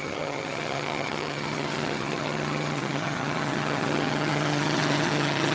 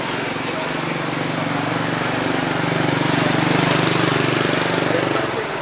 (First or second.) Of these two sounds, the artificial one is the first